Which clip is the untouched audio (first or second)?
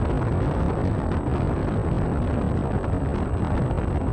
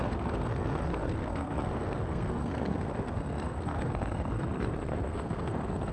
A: first